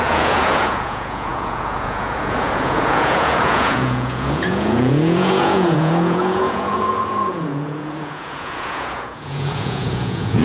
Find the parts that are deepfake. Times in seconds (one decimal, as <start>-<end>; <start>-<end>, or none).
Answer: 0.0-10.4